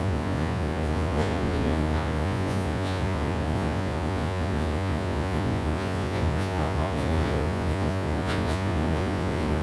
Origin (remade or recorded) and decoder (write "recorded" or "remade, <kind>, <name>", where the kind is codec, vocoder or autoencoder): remade, vocoder, Vocos